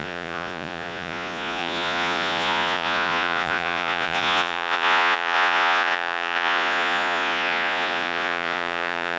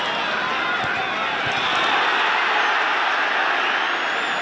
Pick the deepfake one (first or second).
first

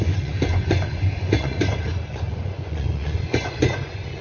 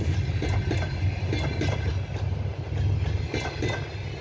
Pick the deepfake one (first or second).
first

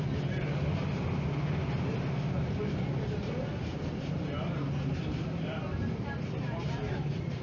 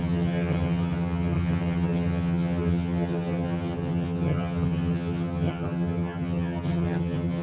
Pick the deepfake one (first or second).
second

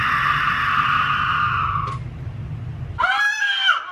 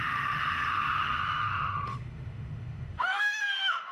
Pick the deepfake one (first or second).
second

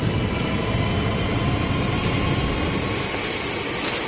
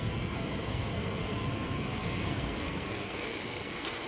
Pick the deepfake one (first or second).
second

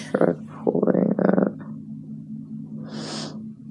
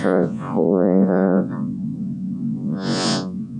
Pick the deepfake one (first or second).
second